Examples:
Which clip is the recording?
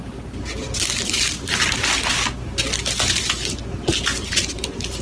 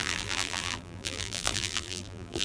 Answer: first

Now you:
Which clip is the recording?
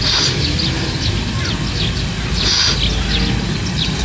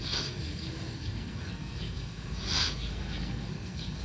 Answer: first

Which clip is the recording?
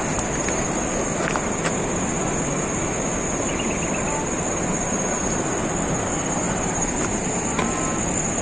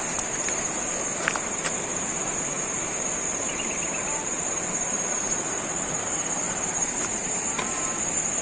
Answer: first